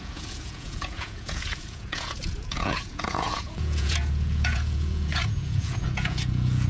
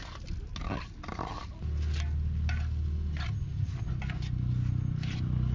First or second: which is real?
second